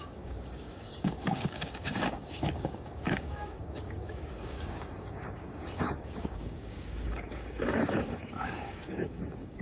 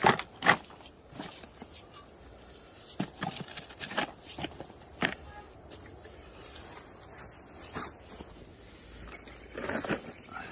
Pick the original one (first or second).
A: second